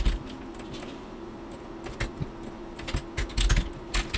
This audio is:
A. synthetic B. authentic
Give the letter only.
B